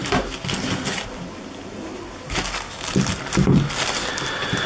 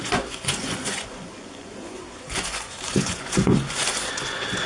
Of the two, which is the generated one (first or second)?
second